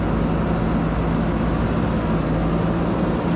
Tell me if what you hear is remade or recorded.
recorded